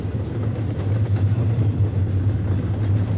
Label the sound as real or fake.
real